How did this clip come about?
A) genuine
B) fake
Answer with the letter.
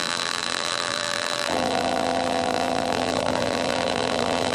B